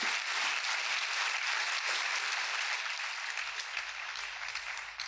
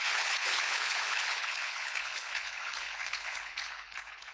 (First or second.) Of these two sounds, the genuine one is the first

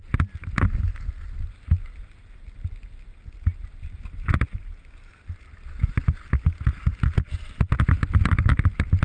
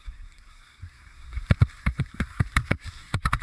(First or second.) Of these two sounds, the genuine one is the first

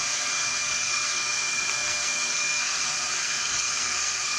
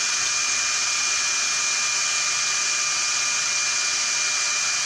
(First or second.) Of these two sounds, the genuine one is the second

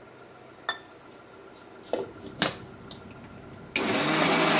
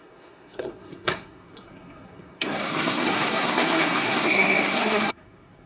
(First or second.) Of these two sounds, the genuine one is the first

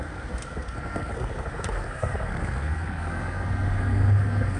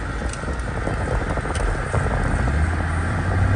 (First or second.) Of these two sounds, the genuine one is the second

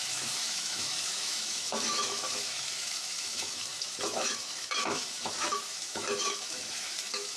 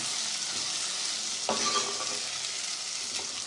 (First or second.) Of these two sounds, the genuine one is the second